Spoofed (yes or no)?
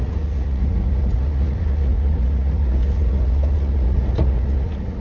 yes